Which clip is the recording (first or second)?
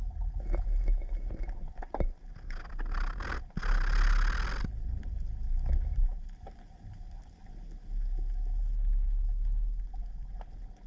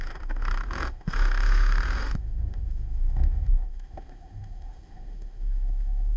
first